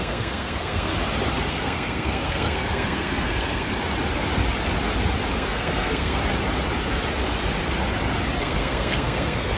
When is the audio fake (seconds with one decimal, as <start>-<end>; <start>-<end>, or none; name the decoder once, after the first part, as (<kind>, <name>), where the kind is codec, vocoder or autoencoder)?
0.0-0.9 (codec, SNAC); 1.5-3.7; 5.3-6.2; 8.4-9.6

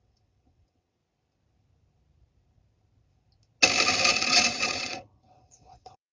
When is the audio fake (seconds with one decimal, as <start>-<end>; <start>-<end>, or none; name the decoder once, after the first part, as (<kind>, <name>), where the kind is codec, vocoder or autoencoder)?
0.0-1.0 (vocoder, WaveNeXt); 4.1-6.1

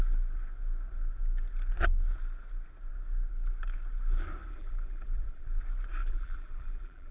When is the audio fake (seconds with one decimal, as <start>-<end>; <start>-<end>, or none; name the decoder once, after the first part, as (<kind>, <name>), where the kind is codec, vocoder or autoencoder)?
4.5-5.6 (vocoder, BigVGAN v2); 6.0-7.1

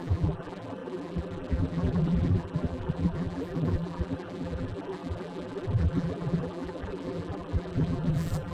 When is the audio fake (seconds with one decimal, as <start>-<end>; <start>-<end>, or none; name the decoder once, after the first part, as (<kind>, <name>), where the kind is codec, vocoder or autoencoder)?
0.0-8.5 (vocoder, BigVGAN v2)

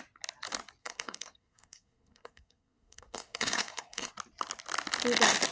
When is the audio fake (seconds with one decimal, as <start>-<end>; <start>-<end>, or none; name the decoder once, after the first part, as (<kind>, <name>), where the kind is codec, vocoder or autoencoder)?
0.8-4.1 (codec, SNAC)

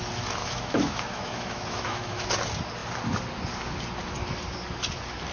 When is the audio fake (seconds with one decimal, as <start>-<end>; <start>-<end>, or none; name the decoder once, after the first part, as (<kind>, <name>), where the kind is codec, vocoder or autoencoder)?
0.4-2.3 (autoencoder, DAC-VAE)